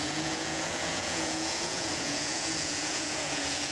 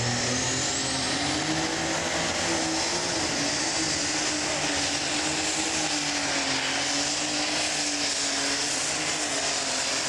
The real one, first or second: second